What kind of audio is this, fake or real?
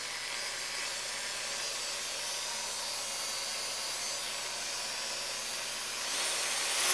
real